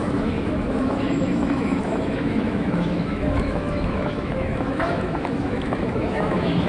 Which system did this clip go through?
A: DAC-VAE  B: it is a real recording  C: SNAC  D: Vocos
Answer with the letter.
A